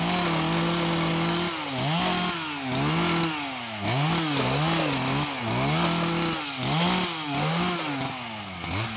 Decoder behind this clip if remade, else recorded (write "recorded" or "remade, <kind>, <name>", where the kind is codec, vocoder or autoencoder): recorded